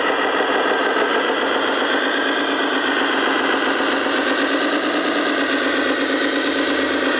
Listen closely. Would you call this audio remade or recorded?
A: recorded